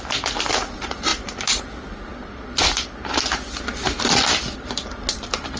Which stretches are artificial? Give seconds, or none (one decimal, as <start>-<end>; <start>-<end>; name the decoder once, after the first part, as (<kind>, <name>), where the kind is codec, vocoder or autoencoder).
none